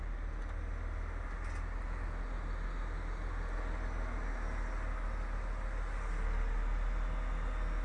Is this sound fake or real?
real